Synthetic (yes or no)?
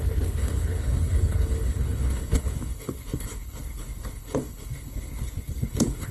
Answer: yes